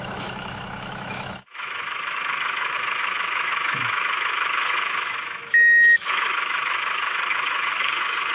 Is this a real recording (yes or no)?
no